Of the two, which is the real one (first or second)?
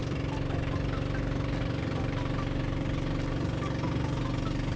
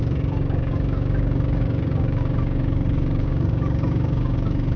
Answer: first